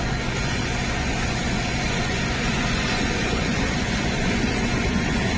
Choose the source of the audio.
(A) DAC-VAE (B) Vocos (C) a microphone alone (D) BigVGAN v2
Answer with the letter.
B